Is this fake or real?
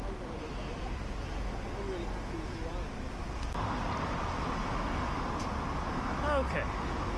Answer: real